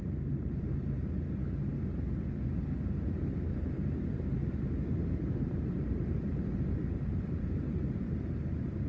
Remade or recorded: remade